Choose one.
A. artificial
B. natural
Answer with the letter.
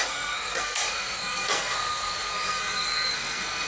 A